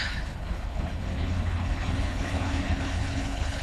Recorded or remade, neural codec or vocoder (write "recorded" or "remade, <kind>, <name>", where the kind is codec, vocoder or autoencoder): remade, codec, HILCodec